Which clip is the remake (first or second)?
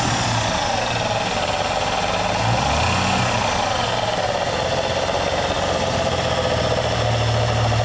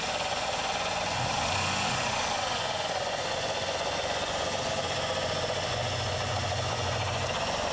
second